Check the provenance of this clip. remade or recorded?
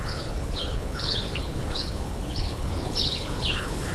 remade